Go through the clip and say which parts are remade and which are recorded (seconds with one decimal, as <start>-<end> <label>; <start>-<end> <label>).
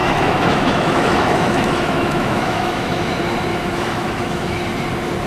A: 0.0-3.1 remade; 3.1-3.5 recorded; 3.5-4.6 remade; 4.6-5.3 recorded